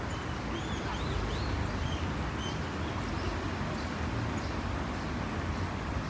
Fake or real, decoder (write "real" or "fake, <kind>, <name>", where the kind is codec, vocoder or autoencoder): real